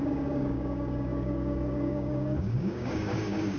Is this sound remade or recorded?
remade